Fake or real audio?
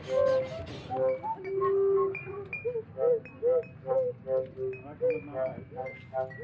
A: real